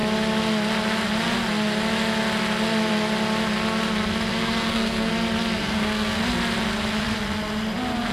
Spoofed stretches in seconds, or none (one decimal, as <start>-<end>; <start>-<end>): 4.3-5.1; 5.6-6.2